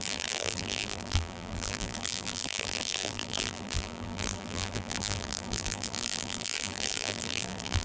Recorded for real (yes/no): no